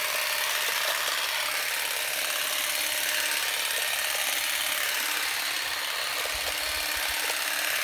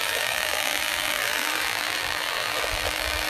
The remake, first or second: second